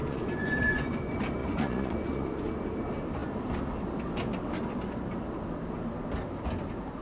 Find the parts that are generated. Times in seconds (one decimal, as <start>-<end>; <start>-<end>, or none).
0.0-1.0; 1.4-2.5